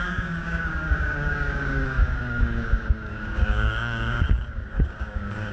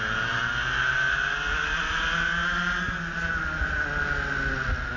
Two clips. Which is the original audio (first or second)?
second